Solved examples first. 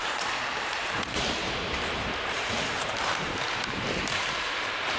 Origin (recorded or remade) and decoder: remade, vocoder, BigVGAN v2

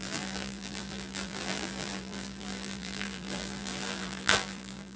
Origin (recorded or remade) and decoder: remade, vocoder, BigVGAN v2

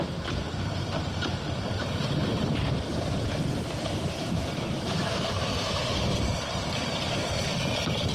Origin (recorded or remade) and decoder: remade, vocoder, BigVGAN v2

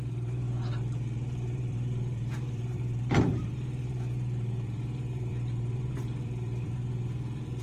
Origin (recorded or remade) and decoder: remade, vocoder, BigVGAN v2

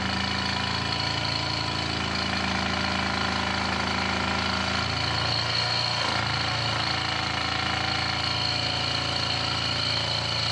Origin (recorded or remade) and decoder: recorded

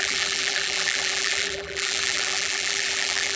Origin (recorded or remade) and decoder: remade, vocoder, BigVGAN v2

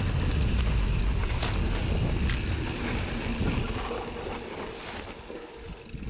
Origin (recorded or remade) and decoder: recorded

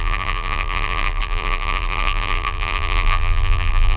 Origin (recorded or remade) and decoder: remade, vocoder, BigVGAN v2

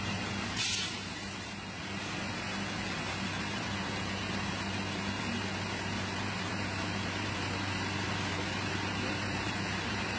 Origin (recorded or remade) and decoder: remade, vocoder, BigVGAN v2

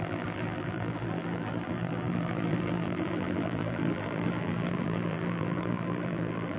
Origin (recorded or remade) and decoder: remade, vocoder, BigVGAN v2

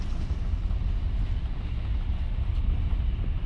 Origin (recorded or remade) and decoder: recorded